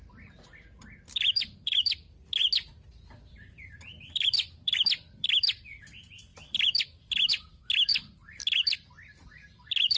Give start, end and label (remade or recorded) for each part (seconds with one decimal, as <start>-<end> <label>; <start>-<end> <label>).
0.0-2.4 remade; 2.4-3.3 recorded; 3.3-10.0 remade